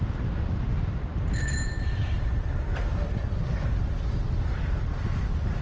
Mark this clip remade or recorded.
remade